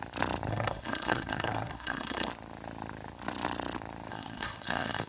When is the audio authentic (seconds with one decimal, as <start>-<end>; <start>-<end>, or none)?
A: 0.0-0.5; 2.3-4.1